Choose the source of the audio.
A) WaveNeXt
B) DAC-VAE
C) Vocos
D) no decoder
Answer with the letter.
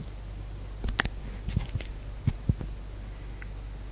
D